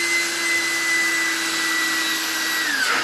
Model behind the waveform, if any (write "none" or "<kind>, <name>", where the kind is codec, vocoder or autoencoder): none